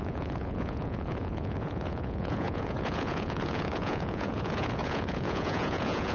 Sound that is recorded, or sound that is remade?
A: remade